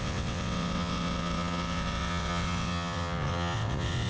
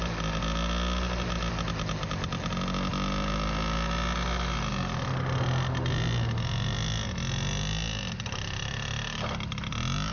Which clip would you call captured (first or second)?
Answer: second